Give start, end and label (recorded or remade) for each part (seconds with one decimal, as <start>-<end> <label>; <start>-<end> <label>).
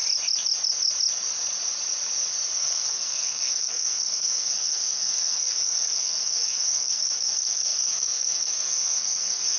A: 0.0-2.6 recorded; 2.6-9.6 remade